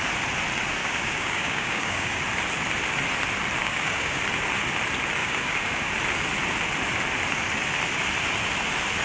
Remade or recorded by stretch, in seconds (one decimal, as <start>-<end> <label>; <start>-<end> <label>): 0.0-0.8 recorded; 0.8-2.2 remade; 2.2-3.6 recorded; 3.6-4.2 remade; 4.2-5.2 recorded; 5.2-5.9 remade; 5.9-9.0 recorded